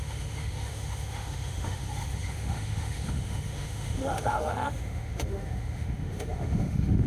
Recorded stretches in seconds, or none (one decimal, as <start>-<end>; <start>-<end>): none